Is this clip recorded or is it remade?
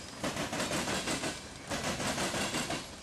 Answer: recorded